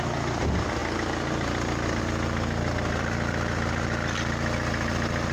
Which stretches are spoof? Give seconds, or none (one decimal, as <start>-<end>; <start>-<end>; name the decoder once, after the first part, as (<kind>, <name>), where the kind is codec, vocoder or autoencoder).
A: none